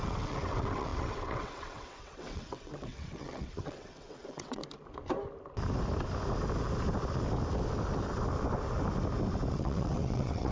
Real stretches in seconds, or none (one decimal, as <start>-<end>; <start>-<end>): 4.6-9.5